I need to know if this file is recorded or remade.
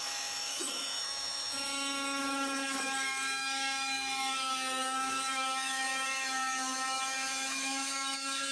remade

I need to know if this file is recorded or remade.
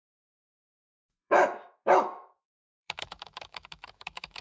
remade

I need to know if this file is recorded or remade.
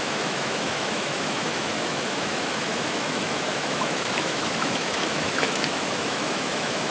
remade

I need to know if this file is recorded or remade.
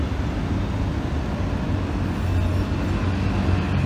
recorded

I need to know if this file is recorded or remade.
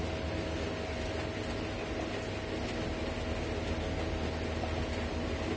recorded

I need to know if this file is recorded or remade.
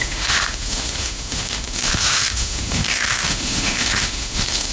remade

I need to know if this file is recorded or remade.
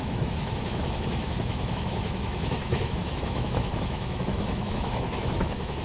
remade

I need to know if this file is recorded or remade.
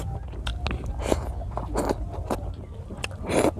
recorded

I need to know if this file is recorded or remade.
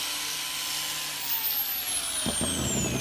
recorded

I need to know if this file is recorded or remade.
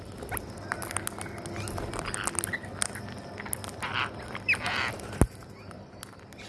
recorded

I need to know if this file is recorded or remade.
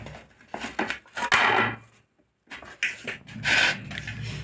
recorded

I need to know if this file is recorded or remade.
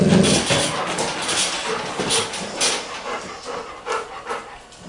recorded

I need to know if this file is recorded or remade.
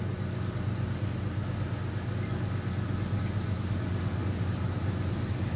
recorded